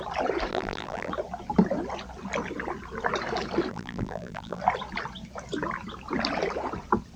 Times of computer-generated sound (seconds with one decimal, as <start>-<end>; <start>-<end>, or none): 0.5-1.1; 3.7-4.6